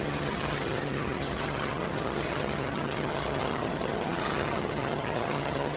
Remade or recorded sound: remade